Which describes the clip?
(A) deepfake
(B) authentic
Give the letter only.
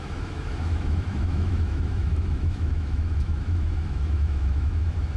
A